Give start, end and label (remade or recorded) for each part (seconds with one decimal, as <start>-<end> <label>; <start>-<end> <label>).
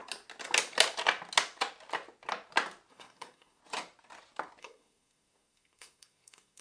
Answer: 0.0-2.9 recorded; 2.9-3.6 remade; 3.6-4.6 recorded; 4.6-6.6 remade